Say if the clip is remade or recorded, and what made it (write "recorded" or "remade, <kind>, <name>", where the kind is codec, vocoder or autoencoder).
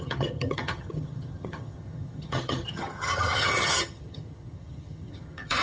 remade, vocoder, HiFi-GAN